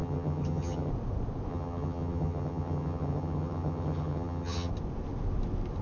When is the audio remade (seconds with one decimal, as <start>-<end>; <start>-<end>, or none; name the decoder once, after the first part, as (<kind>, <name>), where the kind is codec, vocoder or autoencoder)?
0.0-0.9 (vocoder, HiFi-GAN); 1.5-4.7